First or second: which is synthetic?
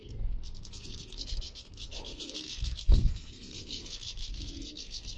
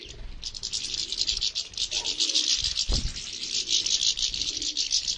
first